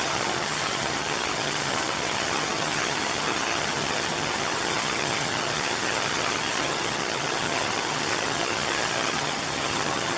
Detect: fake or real fake